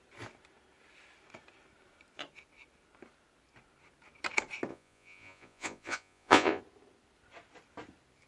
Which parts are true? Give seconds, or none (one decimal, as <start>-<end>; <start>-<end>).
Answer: 0.0-4.7; 6.6-8.3